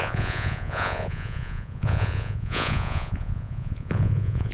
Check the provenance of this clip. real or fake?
fake